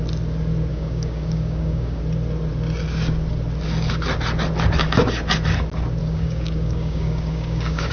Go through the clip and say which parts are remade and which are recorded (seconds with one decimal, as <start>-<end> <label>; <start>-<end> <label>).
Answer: 0.0-0.7 recorded; 0.7-2.0 remade; 2.0-6.0 recorded; 6.0-7.9 remade